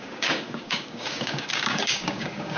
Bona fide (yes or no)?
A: no